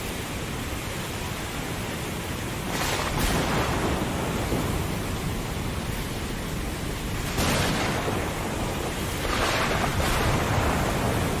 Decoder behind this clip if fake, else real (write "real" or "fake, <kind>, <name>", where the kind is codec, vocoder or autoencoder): real